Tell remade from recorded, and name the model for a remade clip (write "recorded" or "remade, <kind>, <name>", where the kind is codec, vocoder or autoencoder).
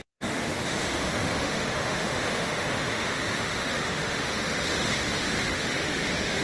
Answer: remade, autoencoder, DAC-VAE